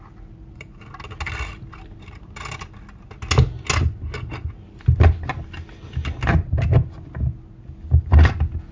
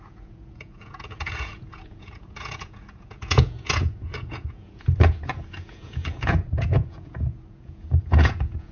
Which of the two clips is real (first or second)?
first